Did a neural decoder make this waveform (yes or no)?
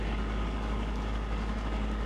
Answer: yes